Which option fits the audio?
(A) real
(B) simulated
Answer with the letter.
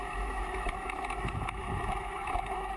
B